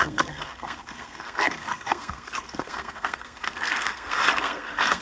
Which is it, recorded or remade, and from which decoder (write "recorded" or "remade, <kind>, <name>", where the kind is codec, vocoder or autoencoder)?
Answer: remade, codec, SNAC